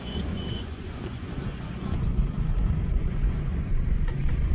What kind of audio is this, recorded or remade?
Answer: remade